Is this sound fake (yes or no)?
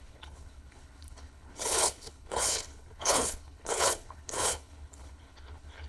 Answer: yes